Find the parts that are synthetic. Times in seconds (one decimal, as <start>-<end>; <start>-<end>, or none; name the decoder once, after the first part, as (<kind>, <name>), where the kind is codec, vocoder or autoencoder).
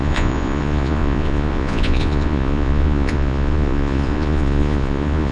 0.0-5.3 (vocoder, Vocos)